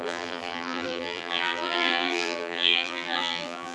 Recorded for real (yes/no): no